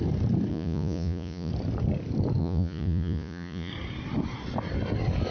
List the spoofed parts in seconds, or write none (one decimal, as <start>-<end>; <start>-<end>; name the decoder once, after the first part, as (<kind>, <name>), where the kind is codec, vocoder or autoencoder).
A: 0.5-1.5 (vocoder, Vocos); 2.4-3.7